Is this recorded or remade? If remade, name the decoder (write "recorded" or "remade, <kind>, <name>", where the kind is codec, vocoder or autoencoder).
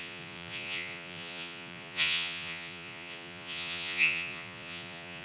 remade, vocoder, Vocos